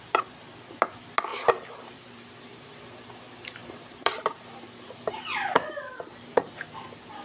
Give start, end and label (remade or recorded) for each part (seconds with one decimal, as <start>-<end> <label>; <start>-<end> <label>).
0.0-1.3 recorded; 1.3-2.7 remade; 2.7-3.6 recorded; 3.6-5.2 remade; 5.2-7.2 recorded

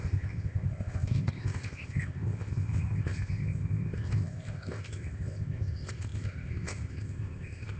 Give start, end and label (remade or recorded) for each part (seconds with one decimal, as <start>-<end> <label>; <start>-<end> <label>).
0.0-7.8 remade

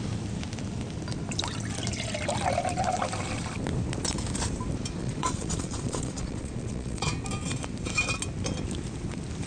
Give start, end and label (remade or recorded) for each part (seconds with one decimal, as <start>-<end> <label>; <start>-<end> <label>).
0.0-5.0 recorded; 5.0-7.1 remade; 7.1-9.5 recorded

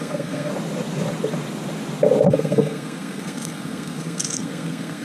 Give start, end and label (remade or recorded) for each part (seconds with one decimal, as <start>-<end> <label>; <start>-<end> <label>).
0.0-0.5 remade; 0.5-2.3 recorded; 2.3-5.0 remade

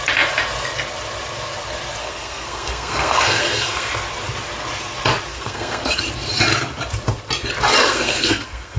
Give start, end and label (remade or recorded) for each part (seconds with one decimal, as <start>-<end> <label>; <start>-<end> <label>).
0.0-2.0 recorded; 2.0-3.9 remade; 3.9-5.3 recorded; 5.3-6.0 remade; 6.0-7.8 recorded; 7.8-8.8 remade